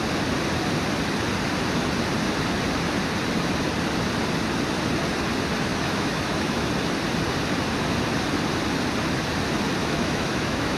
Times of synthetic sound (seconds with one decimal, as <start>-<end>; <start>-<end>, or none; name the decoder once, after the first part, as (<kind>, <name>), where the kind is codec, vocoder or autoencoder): 5.7-6.7 (autoencoder, DAC-VAE); 9.8-10.8